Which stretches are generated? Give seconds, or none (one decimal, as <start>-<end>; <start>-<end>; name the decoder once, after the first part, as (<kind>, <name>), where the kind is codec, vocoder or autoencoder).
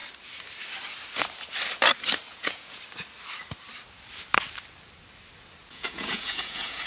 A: 2.3-2.8 (vocoder, Vocos); 5.6-6.9